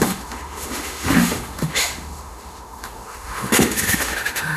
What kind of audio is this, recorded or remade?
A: remade